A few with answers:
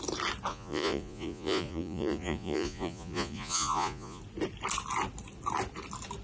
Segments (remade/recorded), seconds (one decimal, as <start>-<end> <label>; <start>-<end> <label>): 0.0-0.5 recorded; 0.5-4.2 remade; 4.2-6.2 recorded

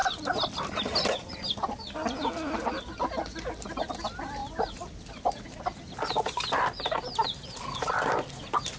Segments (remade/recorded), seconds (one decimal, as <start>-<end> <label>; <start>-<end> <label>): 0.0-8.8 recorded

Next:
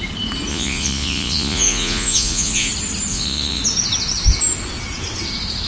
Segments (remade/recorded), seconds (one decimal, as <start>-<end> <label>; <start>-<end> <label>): 0.0-0.5 recorded; 0.5-2.7 remade; 2.7-3.1 recorded; 3.1-3.6 remade; 3.6-5.7 recorded

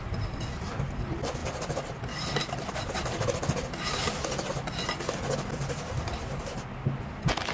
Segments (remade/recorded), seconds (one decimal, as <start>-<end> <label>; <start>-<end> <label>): 0.0-7.5 recorded

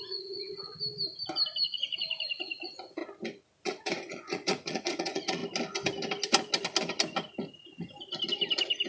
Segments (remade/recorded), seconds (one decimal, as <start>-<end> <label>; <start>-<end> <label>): 0.0-0.7 remade; 0.7-1.6 recorded; 1.6-3.0 remade; 3.0-3.6 recorded; 3.6-5.4 remade; 5.4-8.9 recorded

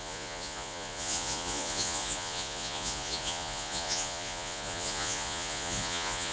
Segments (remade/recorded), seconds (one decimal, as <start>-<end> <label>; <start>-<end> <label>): 0.0-6.3 remade

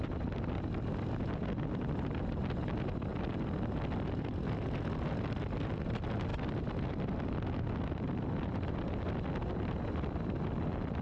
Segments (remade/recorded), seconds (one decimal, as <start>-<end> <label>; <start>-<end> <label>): 0.0-11.0 recorded